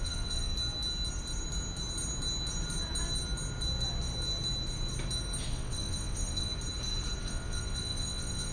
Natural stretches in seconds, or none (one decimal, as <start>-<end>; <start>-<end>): 0.5-5.5; 6.5-7.2